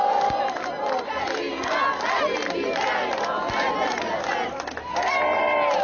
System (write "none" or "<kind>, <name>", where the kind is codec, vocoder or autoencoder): none